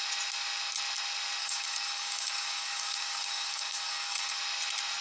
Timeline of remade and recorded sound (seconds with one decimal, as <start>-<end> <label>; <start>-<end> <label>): 0.0-1.4 recorded; 1.4-4.4 remade; 4.4-5.0 recorded